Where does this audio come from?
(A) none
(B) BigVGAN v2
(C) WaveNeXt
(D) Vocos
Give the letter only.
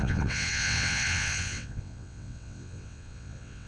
C